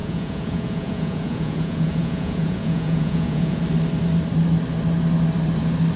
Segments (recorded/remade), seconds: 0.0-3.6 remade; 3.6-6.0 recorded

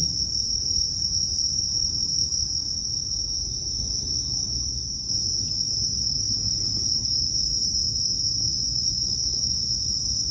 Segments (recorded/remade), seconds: 0.0-3.3 recorded; 3.3-3.8 remade; 3.8-8.5 recorded; 8.5-9.9 remade; 9.9-10.3 recorded

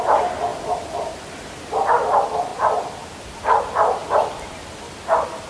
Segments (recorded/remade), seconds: 0.0-2.5 remade; 2.5-3.4 recorded; 3.4-5.5 remade

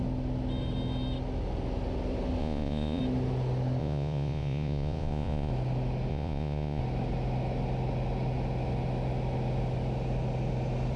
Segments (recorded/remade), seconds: 0.0-2.4 recorded; 2.4-3.0 remade; 3.0-3.8 recorded; 3.8-5.5 remade; 5.5-6.1 recorded; 6.1-6.8 remade; 6.8-11.0 recorded

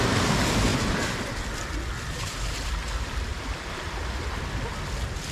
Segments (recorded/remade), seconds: 0.0-5.3 recorded